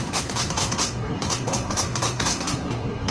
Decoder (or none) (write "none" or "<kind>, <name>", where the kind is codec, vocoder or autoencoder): codec, SNAC